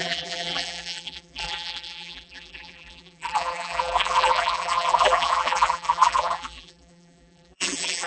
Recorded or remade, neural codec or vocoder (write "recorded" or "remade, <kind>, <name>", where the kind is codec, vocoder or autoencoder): remade, vocoder, BigVGAN v2